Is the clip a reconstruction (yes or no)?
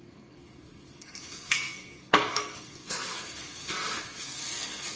yes